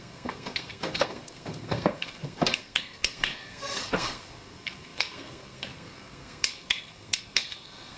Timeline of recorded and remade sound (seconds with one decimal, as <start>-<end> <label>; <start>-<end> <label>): 0.0-8.0 remade